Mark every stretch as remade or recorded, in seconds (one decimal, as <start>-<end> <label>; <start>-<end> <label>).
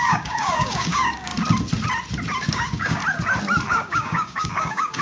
0.0-1.3 remade; 1.3-2.5 recorded; 2.5-3.0 remade; 3.0-3.7 recorded; 3.7-5.0 remade